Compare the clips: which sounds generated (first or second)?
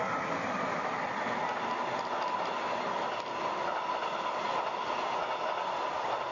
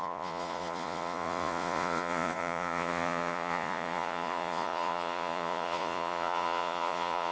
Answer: second